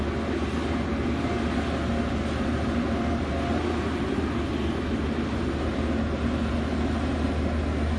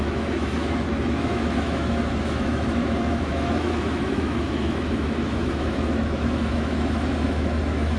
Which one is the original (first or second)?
first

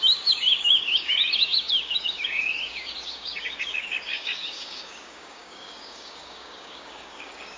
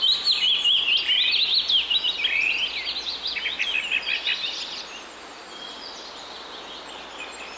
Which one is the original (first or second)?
second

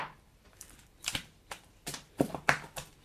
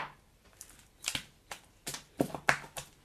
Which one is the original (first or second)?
second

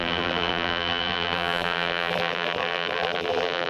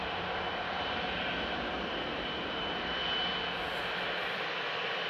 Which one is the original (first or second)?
second